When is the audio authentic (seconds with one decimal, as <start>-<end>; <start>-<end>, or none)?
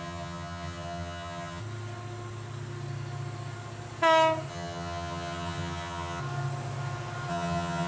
1.6-4.5; 6.2-7.3